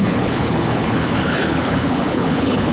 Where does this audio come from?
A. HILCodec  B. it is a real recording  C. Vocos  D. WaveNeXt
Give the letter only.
A